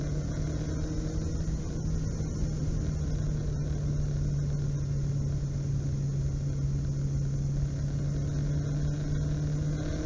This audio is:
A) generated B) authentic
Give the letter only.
B